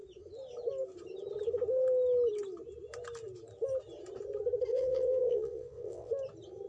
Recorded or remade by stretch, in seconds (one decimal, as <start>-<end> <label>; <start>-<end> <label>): 0.0-4.7 recorded; 4.7-6.1 remade; 6.1-6.7 recorded